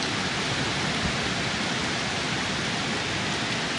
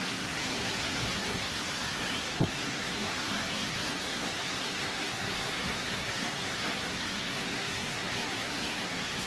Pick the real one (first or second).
first